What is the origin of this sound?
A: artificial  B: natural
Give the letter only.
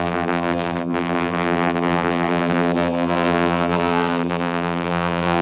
A